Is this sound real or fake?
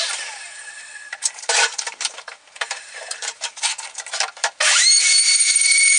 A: fake